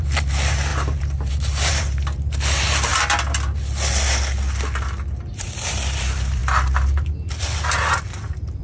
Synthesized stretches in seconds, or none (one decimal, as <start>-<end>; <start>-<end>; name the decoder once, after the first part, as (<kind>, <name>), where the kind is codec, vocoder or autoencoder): 0.0-2.9 (vocoder, BigVGAN v2); 5.3-6.4; 8.2-8.6